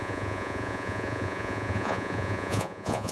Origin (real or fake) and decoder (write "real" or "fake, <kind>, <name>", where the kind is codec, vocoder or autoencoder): fake, vocoder, Vocos